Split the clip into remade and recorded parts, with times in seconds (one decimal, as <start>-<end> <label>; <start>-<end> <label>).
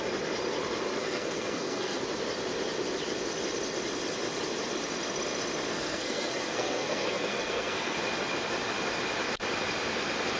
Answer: 0.0-1.0 recorded; 1.0-2.0 remade; 2.0-5.7 recorded; 5.7-8.0 remade; 8.0-10.4 recorded